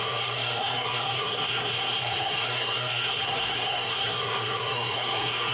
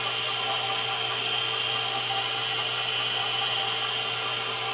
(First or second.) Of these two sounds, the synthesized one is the first